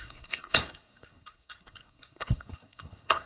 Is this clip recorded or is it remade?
remade